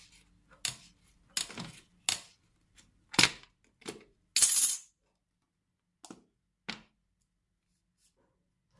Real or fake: real